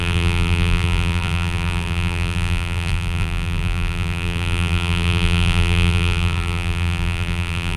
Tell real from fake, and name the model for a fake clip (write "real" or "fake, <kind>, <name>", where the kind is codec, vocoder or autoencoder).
fake, vocoder, BigVGAN v2